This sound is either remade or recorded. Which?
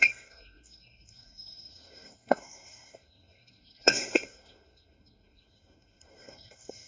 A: remade